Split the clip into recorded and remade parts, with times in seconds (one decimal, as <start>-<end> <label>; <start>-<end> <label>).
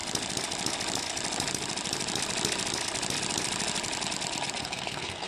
0.0-4.6 recorded; 4.6-5.3 remade